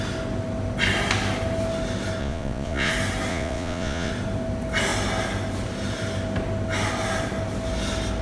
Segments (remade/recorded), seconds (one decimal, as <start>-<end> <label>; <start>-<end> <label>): 0.0-2.2 recorded; 2.2-2.9 remade; 2.9-3.3 recorded; 3.3-4.1 remade; 4.1-8.2 recorded